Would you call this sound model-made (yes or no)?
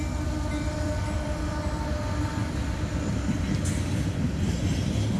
no